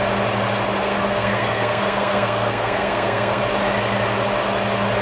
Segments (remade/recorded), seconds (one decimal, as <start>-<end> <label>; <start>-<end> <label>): 0.0-0.8 recorded; 0.8-3.4 remade; 3.4-5.0 recorded